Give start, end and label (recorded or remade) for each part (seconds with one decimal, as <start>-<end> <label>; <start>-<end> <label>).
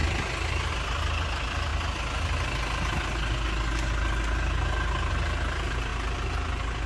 0.0-6.9 recorded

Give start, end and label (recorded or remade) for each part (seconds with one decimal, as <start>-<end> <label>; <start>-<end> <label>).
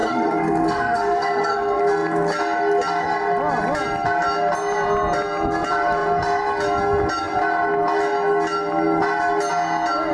0.0-1.8 remade; 1.8-10.1 recorded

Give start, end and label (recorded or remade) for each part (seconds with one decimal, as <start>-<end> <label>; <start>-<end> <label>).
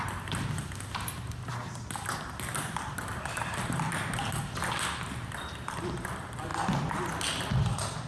0.0-8.1 recorded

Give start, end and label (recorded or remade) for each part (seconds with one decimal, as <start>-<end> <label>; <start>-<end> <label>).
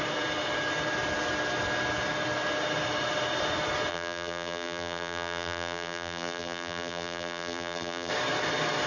0.0-3.9 recorded; 3.9-8.1 remade; 8.1-8.9 recorded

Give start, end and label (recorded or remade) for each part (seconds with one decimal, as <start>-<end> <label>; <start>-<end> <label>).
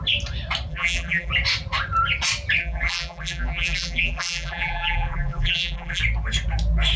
0.0-0.7 recorded; 0.7-1.3 remade; 1.3-2.6 recorded; 2.6-6.0 remade; 6.0-7.0 recorded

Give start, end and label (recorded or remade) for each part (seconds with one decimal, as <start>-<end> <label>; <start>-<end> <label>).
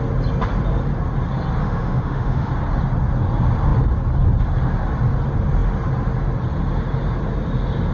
0.0-1.6 recorded; 1.6-2.5 remade; 2.5-7.9 recorded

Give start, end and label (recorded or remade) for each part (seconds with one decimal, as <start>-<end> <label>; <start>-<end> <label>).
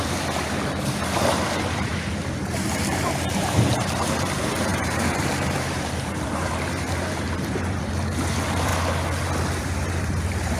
0.0-1.9 remade; 1.9-2.5 recorded; 2.5-8.7 remade; 8.7-9.6 recorded; 9.6-10.6 remade